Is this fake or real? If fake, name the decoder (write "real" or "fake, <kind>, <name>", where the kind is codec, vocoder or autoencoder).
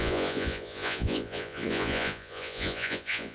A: fake, vocoder, Vocos